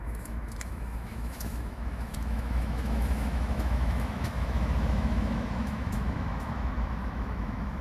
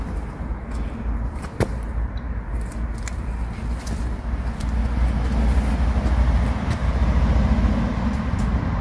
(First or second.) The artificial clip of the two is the first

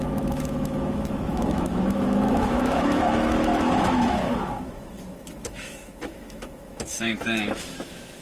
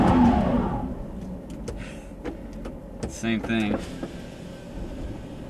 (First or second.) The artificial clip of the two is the first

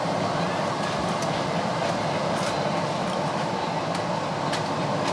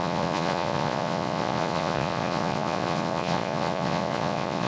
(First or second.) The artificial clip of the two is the second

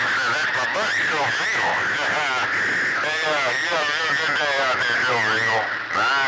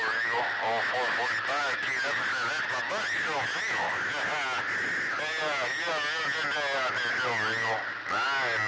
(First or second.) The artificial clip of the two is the first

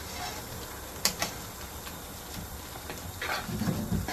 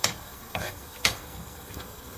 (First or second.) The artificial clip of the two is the second